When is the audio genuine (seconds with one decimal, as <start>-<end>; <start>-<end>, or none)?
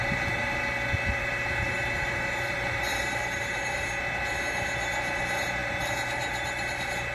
0.0-1.2; 3.9-7.1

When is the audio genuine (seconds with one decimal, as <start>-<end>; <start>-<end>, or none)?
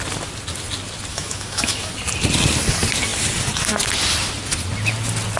0.0-1.1; 1.9-5.4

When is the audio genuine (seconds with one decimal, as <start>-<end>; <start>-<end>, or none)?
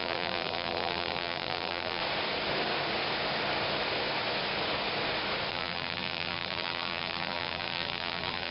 2.0-5.5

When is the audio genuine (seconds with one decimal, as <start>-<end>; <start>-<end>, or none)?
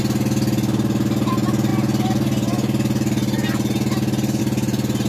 0.0-5.1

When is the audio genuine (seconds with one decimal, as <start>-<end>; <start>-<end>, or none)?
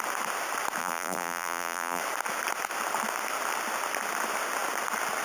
0.0-0.8; 2.0-5.2